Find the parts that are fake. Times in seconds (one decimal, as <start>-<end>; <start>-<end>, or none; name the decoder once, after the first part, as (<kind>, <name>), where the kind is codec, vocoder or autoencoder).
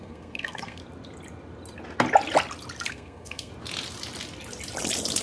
0.0-0.8 (codec, SNAC); 2.9-3.5